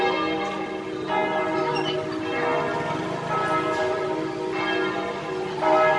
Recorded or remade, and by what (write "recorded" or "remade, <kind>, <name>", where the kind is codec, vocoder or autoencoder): recorded